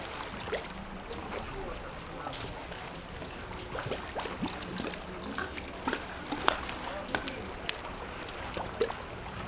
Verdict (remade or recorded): recorded